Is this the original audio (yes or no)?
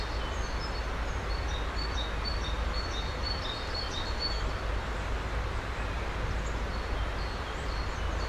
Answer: yes